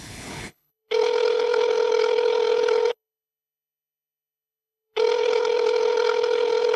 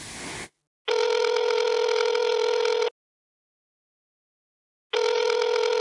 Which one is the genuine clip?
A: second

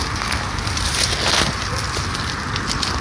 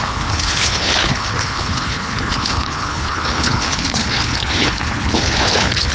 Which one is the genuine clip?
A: first